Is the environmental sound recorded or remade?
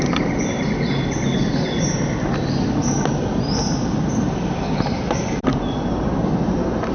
recorded